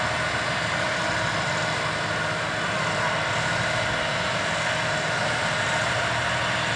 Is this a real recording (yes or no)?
yes